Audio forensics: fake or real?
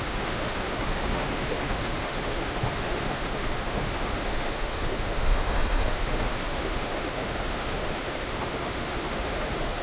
fake